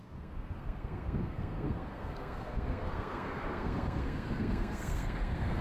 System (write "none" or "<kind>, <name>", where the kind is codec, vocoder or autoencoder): codec, SNAC